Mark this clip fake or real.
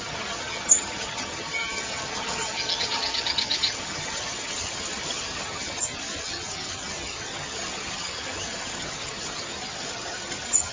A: fake